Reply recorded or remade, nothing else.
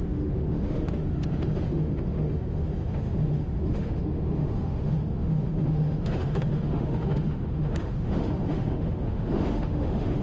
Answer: remade